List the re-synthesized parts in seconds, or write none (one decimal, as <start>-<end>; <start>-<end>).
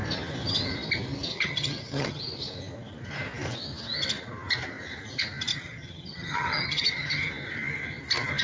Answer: 1.3-2.2; 5.5-7.3